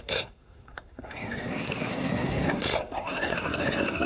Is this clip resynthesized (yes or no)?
yes